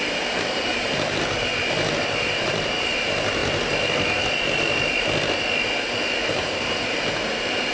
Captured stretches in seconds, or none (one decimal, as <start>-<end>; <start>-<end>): 1.5-2.2; 3.4-6.3